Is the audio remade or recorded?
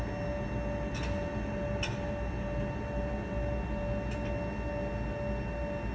recorded